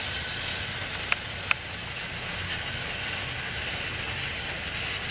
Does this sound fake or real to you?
real